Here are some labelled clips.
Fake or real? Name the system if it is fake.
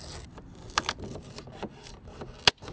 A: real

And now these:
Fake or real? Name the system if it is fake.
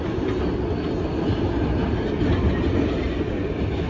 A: real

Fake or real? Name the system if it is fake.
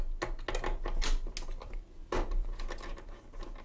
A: real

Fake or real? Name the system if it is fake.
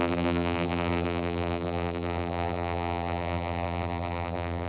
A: fake, vocoder, BigVGAN v2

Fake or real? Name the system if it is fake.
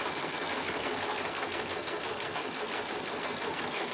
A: fake, codec, SNAC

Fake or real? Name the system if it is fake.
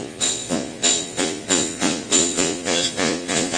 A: fake, vocoder, Vocos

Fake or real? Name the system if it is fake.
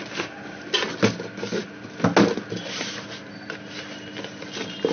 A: real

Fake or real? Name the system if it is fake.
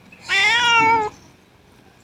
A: real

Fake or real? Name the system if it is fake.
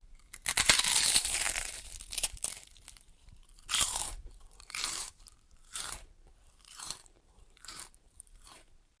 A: fake, vocoder, BigVGAN v2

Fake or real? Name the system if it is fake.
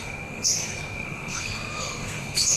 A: fake, codec, SNAC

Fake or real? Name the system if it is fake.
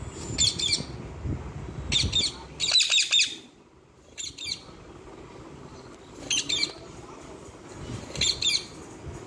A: real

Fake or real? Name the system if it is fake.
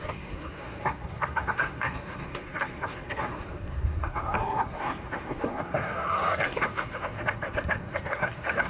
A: fake, codec, SNAC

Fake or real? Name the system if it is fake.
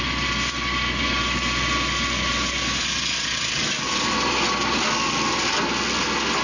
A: real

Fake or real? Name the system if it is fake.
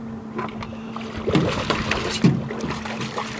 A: real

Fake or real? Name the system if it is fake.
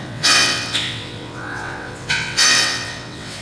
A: fake, vocoder, WaveNeXt